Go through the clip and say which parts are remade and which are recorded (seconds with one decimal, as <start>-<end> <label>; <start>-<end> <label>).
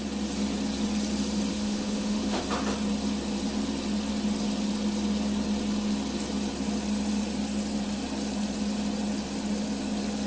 0.0-1.5 recorded; 1.5-2.4 remade; 2.4-10.3 recorded